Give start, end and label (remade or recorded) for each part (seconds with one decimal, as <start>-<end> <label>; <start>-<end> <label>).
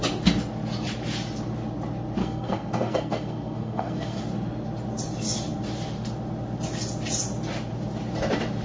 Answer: 0.0-2.2 recorded; 2.2-4.2 remade; 4.2-8.6 recorded